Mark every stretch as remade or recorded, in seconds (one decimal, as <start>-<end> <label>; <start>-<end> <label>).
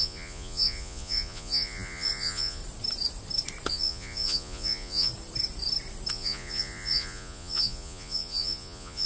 0.0-2.6 remade; 2.6-3.7 recorded; 3.7-5.1 remade; 5.1-6.1 recorded; 6.1-9.1 remade